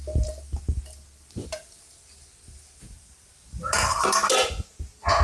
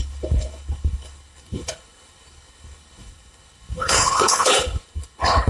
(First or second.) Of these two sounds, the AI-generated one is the second